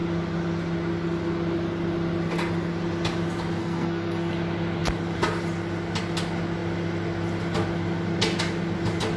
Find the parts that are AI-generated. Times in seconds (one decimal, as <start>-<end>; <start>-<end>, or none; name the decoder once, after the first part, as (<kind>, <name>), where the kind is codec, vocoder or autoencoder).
3.6-4.3 (codec, SNAC)